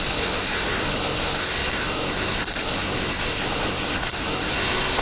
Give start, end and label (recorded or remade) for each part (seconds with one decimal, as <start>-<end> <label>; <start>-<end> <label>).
0.0-5.0 remade